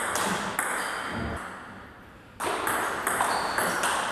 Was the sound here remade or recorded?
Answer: recorded